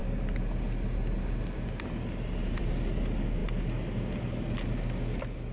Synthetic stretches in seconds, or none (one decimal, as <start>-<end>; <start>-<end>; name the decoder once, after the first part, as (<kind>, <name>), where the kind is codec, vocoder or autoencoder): none